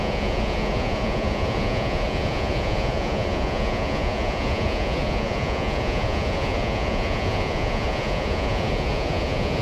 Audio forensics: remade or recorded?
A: remade